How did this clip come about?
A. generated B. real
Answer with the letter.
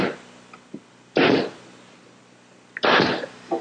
B